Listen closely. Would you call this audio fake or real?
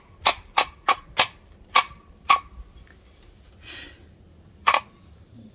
real